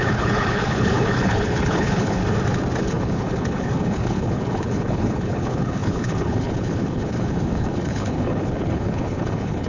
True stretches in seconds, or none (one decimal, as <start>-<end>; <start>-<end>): 2.2-2.8